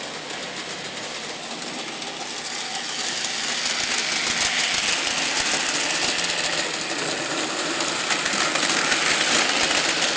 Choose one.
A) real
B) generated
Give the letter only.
A